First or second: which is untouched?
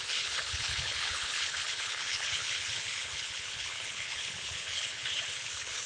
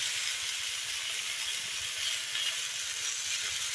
second